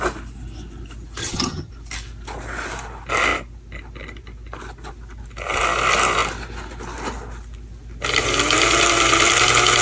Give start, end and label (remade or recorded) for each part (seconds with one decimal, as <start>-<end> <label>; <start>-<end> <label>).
0.0-1.2 recorded; 1.2-1.7 remade; 1.7-9.8 recorded